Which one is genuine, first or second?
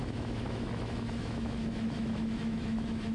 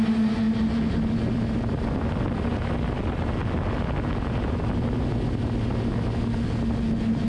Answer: second